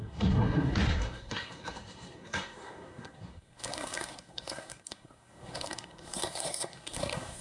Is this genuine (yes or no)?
no